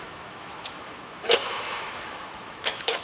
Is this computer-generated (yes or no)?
yes